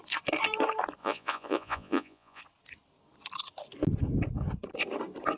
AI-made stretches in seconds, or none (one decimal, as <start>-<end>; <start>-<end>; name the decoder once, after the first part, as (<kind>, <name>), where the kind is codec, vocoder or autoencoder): 1.0-2.4 (vocoder, Vocos)